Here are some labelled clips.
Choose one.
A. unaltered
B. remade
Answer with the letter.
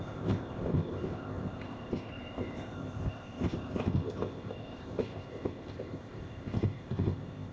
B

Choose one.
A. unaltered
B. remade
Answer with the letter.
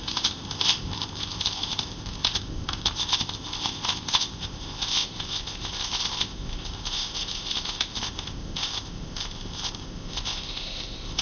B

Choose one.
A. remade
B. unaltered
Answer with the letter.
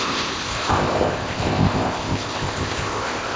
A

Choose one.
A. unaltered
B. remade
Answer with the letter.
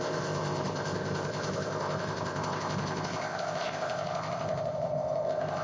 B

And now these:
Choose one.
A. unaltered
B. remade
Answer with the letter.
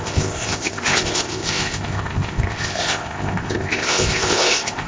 B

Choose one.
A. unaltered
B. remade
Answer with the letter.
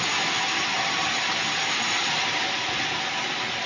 A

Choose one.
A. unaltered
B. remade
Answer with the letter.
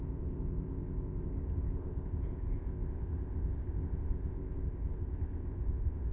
B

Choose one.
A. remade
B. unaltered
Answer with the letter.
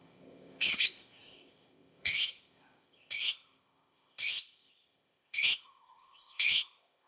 A